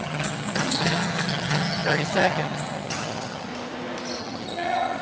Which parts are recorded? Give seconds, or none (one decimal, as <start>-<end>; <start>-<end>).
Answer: 3.5-4.2